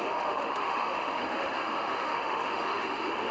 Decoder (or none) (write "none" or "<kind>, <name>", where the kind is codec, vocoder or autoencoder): autoencoder, DAC-VAE